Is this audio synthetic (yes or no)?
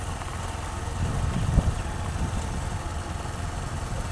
no